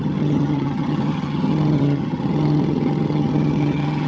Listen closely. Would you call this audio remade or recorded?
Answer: remade